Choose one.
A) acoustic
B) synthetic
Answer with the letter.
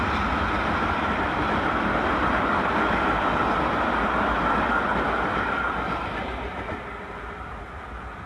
A